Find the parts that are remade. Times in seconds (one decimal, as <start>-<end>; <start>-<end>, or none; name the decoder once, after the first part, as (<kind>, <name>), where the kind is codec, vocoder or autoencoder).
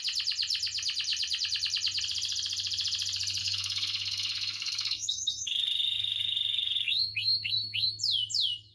3.4-7.9 (codec, SNAC)